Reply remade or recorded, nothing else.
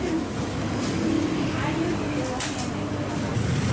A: recorded